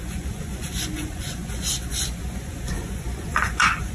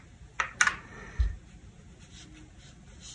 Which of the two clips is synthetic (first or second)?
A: first